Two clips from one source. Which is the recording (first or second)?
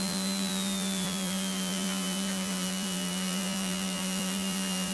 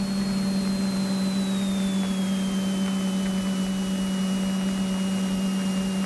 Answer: second